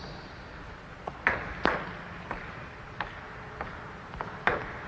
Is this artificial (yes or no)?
no